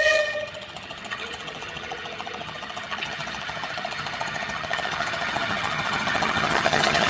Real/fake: fake